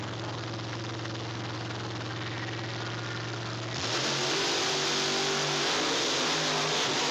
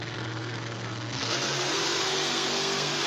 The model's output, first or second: second